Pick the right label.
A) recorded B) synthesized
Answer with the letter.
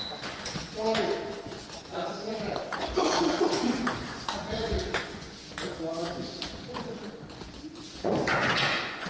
B